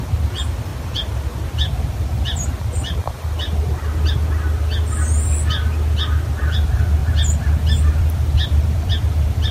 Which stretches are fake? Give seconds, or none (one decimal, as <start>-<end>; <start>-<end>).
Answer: 7.0-8.9